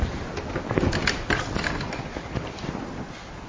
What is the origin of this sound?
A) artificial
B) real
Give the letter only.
B